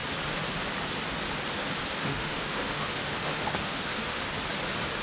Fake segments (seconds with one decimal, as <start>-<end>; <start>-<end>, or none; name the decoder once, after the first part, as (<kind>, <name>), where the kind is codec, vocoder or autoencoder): 2.0-4.3 (autoencoder, DAC-VAE)